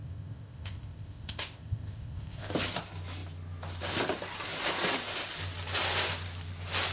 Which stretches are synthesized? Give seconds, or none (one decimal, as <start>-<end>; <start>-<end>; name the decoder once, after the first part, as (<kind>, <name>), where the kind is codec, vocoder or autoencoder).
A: 0.0-2.5 (codec, ZipCodec)